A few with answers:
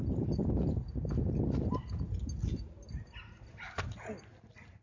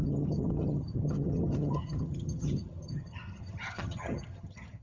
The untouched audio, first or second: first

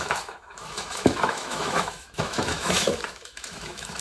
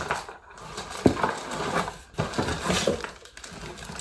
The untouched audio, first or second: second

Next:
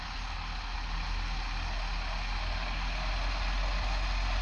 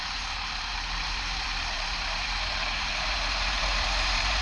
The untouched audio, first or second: first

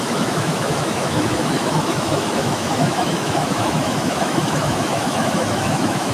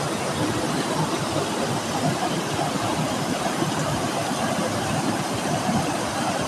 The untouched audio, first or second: second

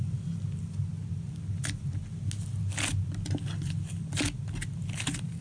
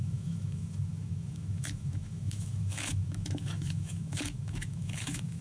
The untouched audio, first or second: first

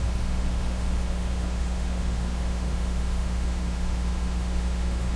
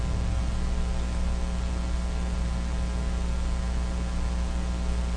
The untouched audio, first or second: second